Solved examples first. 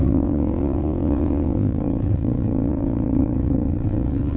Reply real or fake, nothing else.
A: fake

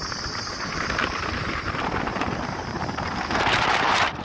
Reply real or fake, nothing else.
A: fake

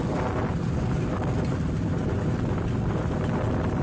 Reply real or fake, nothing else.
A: real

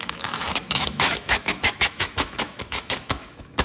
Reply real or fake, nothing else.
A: fake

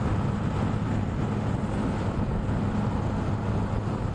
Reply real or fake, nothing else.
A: real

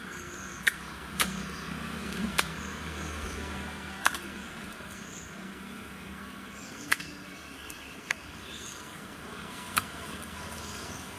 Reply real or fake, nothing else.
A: fake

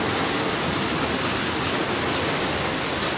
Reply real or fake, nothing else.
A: real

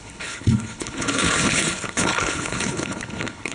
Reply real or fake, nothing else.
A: fake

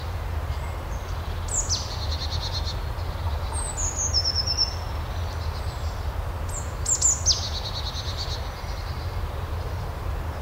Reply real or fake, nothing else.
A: real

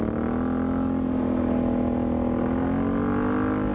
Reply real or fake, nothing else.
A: real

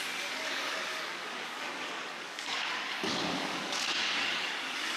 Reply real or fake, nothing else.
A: fake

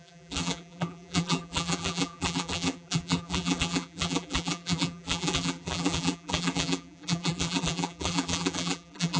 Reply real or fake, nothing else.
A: fake